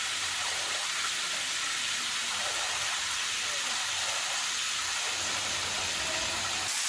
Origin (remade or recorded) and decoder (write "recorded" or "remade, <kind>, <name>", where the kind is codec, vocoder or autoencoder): recorded